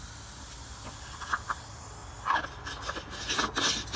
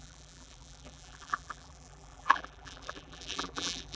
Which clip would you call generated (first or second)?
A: second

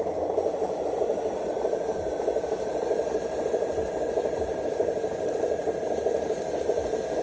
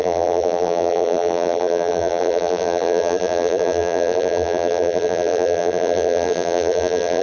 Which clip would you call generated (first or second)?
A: second